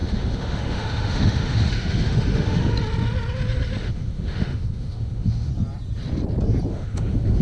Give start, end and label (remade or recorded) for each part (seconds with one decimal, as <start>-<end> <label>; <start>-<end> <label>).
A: 0.0-2.7 remade; 2.7-3.8 recorded; 3.8-5.5 remade; 5.5-6.7 recorded; 6.7-7.4 remade